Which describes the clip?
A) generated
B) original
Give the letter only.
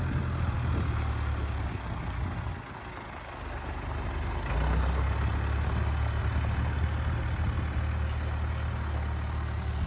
B